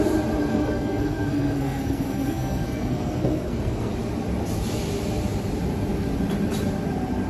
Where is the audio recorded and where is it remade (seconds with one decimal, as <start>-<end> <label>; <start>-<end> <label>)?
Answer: 0.0-0.5 recorded; 0.5-3.9 remade; 3.9-7.3 recorded